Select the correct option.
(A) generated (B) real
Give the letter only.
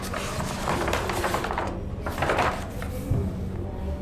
B